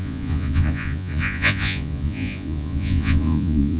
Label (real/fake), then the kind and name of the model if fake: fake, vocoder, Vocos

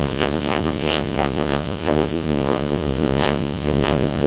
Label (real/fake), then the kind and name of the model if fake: fake, vocoder, Vocos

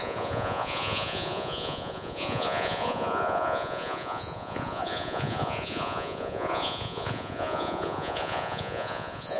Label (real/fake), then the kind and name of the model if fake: fake, vocoder, Vocos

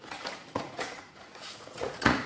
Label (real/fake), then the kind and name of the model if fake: fake, vocoder, Vocos